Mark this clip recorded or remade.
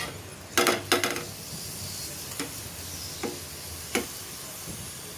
recorded